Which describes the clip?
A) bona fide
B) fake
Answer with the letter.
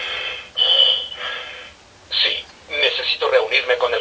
A